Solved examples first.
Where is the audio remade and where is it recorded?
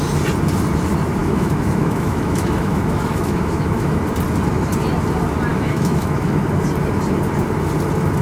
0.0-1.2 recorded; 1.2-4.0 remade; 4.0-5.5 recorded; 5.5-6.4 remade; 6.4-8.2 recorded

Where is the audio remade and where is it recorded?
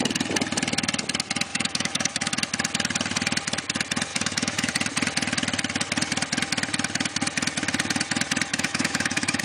0.0-1.5 recorded; 1.5-2.3 remade; 2.3-4.1 recorded; 4.1-4.7 remade; 4.7-8.5 recorded; 8.5-9.4 remade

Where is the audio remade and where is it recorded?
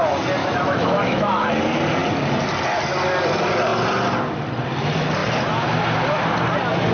0.0-0.4 recorded; 0.4-1.5 remade; 1.5-6.9 recorded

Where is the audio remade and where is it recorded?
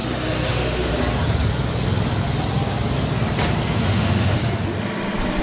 0.0-0.5 recorded; 0.5-0.9 remade; 0.9-3.8 recorded; 3.8-4.4 remade; 4.4-5.4 recorded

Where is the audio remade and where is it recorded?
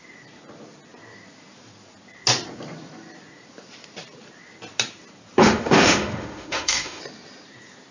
0.0-5.4 recorded; 5.4-7.0 remade; 7.0-7.9 recorded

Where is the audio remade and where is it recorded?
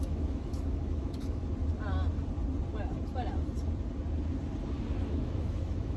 0.0-1.4 remade; 1.4-5.0 recorded; 5.0-6.0 remade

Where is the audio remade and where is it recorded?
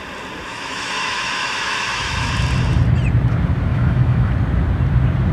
0.0-0.5 recorded; 0.5-2.3 remade; 2.3-3.7 recorded; 3.7-4.3 remade; 4.3-5.3 recorded